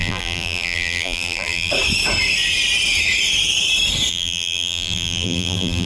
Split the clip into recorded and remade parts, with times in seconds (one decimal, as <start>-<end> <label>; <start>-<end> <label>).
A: 0.0-1.7 remade; 1.7-4.1 recorded; 4.1-5.9 remade